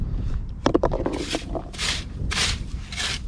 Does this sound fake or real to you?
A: fake